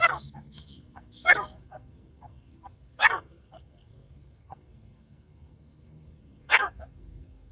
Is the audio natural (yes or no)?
no